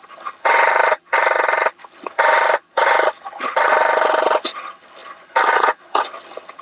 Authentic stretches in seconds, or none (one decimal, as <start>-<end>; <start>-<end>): none